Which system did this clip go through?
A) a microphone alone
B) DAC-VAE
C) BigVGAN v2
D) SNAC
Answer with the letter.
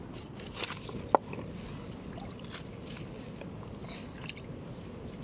A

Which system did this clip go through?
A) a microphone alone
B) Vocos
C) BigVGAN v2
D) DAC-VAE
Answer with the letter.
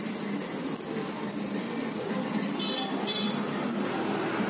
A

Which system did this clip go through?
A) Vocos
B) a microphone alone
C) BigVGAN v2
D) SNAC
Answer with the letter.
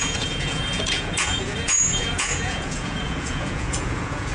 A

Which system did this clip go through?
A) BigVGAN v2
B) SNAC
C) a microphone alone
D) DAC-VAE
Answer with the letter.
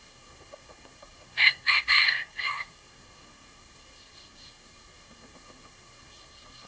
B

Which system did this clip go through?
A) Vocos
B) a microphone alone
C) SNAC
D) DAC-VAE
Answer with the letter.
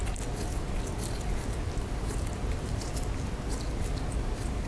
B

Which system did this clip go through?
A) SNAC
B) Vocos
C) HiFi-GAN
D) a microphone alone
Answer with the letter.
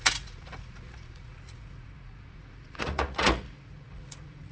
B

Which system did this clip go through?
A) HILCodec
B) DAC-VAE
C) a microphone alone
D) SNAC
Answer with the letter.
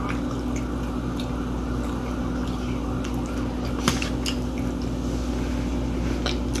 C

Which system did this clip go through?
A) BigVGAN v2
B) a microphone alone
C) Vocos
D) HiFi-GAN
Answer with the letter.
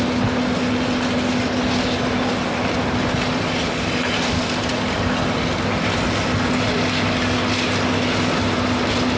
B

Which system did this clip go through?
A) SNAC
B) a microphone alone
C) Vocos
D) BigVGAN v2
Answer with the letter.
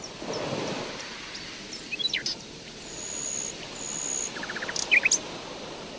B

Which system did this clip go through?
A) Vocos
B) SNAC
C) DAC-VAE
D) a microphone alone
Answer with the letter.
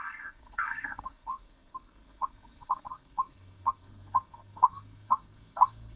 B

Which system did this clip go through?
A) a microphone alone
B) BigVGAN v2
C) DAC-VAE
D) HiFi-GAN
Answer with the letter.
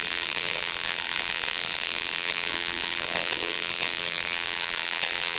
B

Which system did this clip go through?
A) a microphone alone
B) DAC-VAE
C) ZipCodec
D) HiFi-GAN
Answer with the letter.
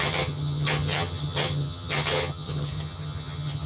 D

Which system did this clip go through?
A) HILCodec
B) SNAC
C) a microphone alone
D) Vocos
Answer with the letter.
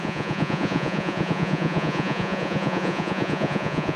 D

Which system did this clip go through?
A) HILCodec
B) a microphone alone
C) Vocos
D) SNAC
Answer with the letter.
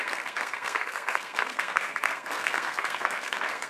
D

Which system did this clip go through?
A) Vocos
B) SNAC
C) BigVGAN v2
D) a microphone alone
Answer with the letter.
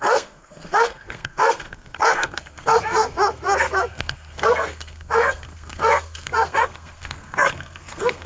B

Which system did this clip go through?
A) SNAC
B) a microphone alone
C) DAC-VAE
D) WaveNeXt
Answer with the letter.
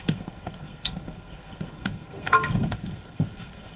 A